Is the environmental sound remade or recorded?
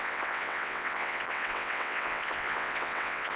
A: remade